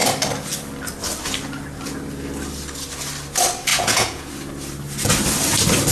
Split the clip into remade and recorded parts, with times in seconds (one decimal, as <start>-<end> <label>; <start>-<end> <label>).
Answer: 0.0-3.7 recorded; 3.7-4.3 remade; 4.3-5.9 recorded